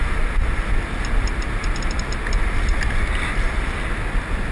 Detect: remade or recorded recorded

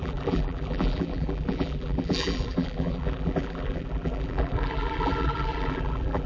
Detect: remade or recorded remade